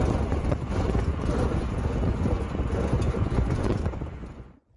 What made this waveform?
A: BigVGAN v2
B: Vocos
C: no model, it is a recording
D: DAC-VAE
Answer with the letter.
B